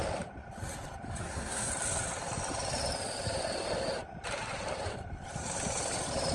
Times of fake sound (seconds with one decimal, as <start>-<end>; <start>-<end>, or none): 1.2-1.7